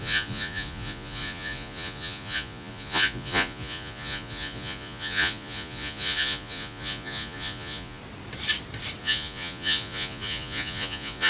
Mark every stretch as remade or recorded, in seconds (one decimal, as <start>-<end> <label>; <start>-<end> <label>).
0.0-8.0 remade; 8.0-9.0 recorded; 9.0-11.3 remade